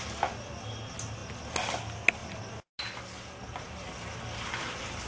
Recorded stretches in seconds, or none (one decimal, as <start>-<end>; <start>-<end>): 0.0-5.1